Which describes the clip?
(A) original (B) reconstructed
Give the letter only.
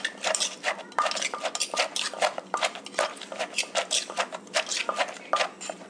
A